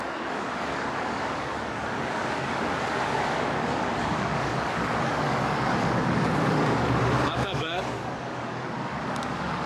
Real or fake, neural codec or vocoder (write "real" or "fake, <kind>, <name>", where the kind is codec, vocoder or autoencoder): fake, codec, DAC